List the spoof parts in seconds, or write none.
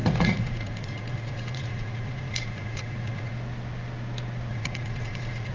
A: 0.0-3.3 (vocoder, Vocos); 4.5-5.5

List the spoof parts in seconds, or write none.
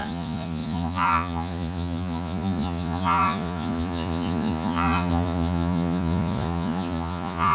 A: 0.0-7.5 (vocoder, Vocos)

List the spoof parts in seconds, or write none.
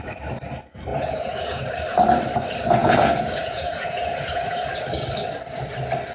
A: 0.9-1.6 (vocoder, Vocos); 2.8-4.7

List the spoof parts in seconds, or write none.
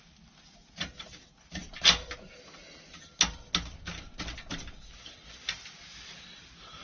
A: none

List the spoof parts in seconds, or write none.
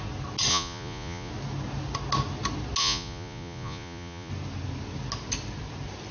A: 0.5-1.3 (vocoder, Vocos); 2.8-4.3